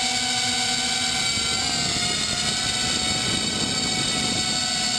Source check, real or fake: real